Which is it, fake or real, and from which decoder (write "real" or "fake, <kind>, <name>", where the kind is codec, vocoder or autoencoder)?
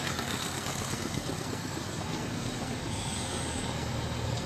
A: fake, codec, SNAC